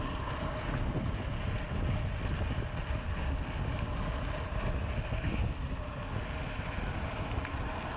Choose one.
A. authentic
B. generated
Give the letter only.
A